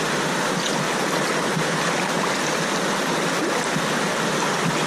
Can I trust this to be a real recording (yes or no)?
yes